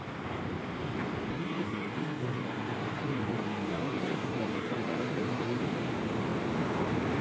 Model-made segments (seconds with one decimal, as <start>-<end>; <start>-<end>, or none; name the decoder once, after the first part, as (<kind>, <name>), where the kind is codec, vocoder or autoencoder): 1.3-5.6 (codec, SNAC)